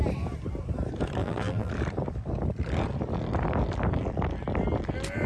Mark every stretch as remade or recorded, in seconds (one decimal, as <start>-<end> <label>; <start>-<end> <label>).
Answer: 0.0-1.2 recorded; 1.2-1.7 remade; 1.7-5.3 recorded